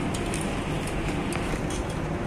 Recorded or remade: recorded